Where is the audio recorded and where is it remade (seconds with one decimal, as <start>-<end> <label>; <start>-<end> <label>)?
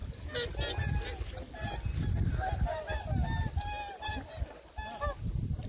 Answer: 0.0-5.7 recorded